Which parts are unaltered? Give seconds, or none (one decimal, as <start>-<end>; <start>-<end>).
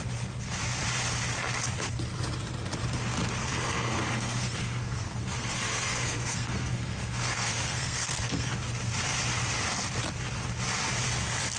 0.0-3.4; 8.5-11.6